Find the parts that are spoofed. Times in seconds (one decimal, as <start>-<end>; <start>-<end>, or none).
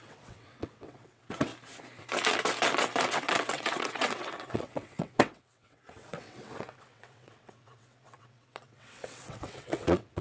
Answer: 0.0-1.5; 3.1-10.2